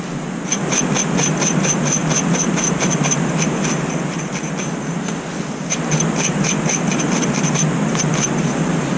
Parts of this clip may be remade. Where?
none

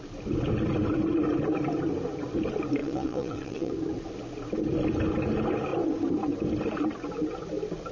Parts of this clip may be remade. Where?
2.8-3.7 (vocoder, WaveNeXt)

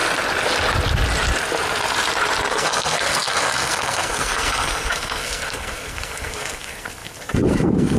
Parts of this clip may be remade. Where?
2.5-8.0 (codec, SNAC)

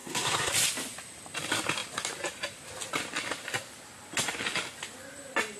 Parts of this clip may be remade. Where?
0.0-0.5 (codec, SNAC)

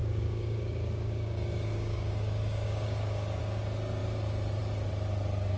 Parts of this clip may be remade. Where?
0.0-3.4 (codec, DAC)

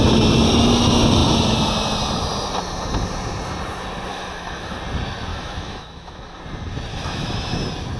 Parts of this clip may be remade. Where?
4.1-4.8 (autoencoder, DAC-VAE); 5.3-6.4; 6.9-7.6

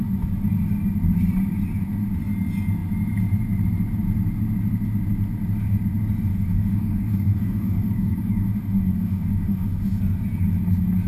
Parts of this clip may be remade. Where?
6.3-10.0 (autoencoder, DAC-VAE)